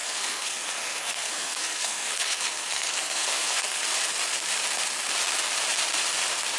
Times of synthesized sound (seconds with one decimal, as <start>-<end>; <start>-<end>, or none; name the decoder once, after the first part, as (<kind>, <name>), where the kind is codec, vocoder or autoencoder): 0.0-3.8 (codec, SNAC)